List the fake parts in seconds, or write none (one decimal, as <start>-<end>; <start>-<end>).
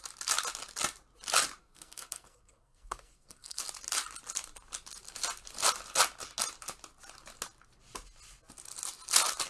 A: 1.6-3.6